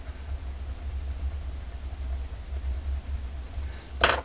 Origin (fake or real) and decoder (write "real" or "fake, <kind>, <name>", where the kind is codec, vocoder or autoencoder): real